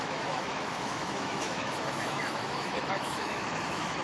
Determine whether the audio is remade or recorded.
remade